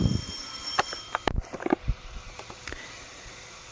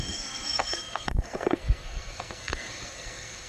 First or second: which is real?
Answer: first